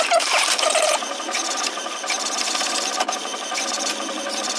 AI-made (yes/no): yes